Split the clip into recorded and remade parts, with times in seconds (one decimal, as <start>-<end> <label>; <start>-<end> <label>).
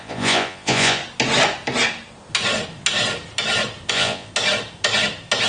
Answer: 0.0-1.0 remade; 1.0-3.9 recorded; 3.9-4.3 remade; 4.3-5.5 recorded